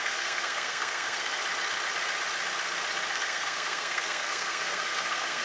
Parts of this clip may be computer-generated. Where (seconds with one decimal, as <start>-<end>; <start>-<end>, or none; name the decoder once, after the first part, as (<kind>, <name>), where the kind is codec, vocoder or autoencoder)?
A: 0.0-1.4 (codec, SNAC); 3.1-5.4